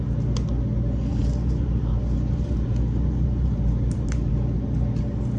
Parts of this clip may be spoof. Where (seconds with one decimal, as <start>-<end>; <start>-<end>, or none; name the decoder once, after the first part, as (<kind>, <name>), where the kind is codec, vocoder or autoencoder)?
1.1-4.3 (vocoder, BigVGAN v2)